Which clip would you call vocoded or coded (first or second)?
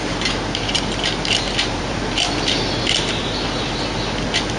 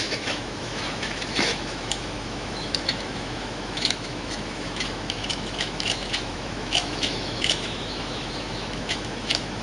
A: second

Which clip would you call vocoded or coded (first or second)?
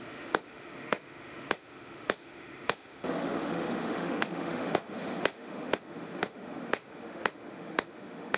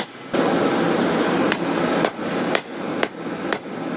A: first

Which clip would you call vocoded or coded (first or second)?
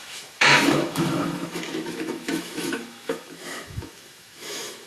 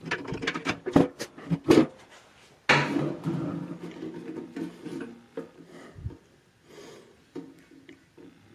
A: first